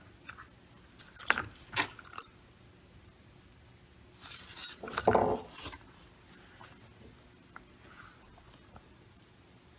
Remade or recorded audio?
recorded